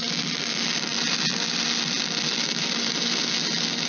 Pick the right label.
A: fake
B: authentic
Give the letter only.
B